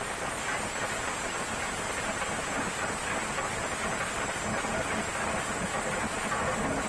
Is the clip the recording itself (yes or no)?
yes